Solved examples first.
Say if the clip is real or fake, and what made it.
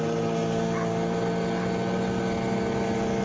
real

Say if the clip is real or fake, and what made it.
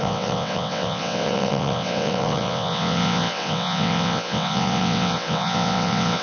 fake, vocoder, WaveNeXt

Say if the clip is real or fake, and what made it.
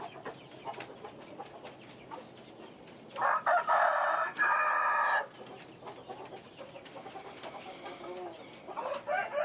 real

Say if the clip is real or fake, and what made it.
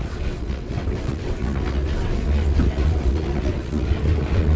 fake, vocoder, WaveNeXt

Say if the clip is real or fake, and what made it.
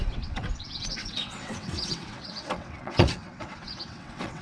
fake, vocoder, WaveNeXt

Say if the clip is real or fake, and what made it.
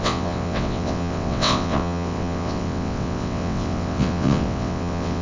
fake, vocoder, WaveNeXt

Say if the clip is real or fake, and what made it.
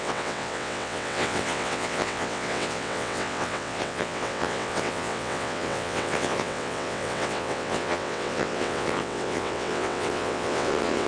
fake, vocoder, WaveNeXt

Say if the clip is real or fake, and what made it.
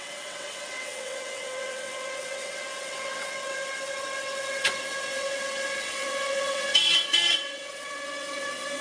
fake, vocoder, WaveNeXt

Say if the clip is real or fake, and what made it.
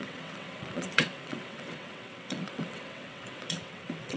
fake, vocoder, WaveNeXt